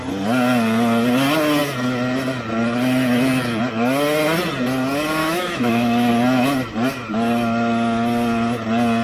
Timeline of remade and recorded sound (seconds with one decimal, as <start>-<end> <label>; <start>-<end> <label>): 0.0-5.2 recorded; 5.2-6.1 remade; 6.1-9.0 recorded